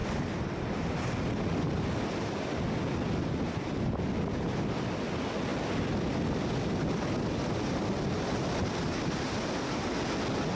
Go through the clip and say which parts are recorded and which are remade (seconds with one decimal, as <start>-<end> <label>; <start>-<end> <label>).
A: 0.0-10.5 recorded

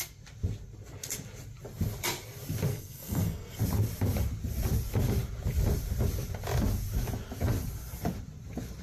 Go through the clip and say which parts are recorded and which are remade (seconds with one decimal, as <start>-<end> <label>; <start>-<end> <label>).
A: 0.0-2.7 recorded; 2.7-3.6 remade; 3.6-8.8 recorded

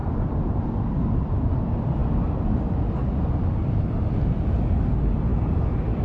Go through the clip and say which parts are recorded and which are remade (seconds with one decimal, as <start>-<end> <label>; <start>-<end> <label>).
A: 0.0-2.0 recorded; 2.0-2.9 remade; 2.9-6.0 recorded

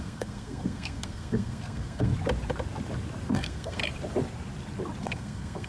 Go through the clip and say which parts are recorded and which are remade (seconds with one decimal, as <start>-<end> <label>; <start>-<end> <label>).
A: 0.0-2.1 remade; 2.1-3.3 recorded; 3.3-3.8 remade; 3.8-5.0 recorded; 5.0-5.7 remade

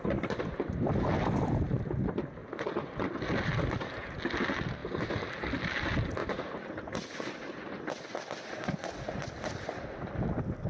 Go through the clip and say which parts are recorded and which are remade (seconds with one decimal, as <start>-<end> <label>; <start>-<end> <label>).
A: 0.0-6.2 recorded; 6.2-8.5 remade; 8.5-10.7 recorded